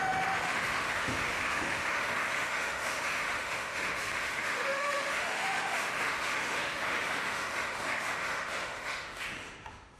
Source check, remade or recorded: remade